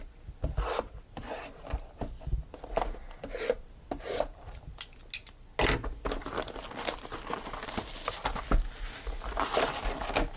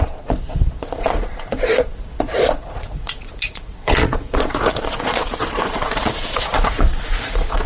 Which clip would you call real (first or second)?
first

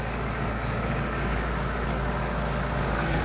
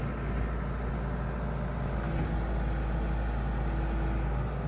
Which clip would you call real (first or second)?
second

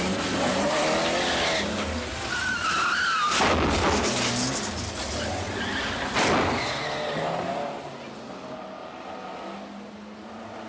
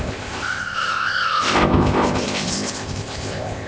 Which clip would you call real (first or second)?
first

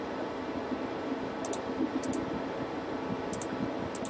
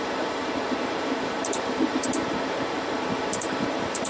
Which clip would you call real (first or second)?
first